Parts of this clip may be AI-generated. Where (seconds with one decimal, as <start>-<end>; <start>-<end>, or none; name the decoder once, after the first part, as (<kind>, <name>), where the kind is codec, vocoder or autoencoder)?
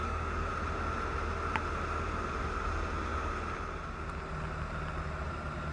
0.0-0.5 (codec, DAC)